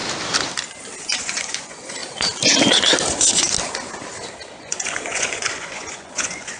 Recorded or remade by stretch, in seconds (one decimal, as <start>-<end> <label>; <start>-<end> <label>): 0.0-1.0 recorded; 1.0-2.0 remade; 2.0-4.6 recorded; 4.6-6.6 remade